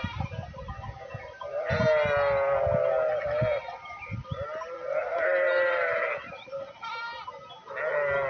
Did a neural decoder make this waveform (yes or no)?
no